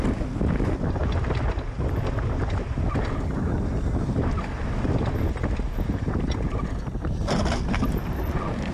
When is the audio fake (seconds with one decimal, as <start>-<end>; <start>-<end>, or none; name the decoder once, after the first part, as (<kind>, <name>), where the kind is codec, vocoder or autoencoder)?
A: none